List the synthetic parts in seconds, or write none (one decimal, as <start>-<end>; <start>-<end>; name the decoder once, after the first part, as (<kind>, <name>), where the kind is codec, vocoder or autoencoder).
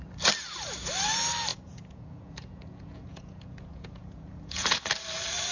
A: 1.5-4.8 (vocoder, Vocos)